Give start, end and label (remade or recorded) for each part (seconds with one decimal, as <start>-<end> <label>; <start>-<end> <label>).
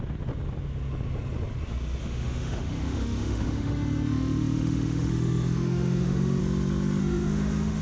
0.0-2.0 recorded; 2.0-6.4 remade; 6.4-7.0 recorded; 7.0-7.8 remade